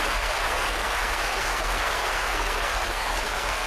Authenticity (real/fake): fake